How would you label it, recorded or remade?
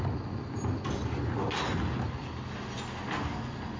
recorded